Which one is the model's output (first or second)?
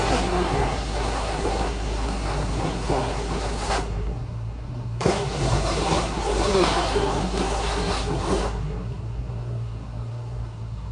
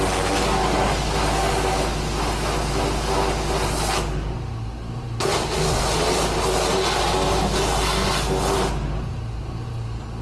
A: first